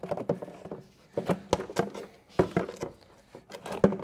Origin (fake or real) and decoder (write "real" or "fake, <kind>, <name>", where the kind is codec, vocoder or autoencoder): real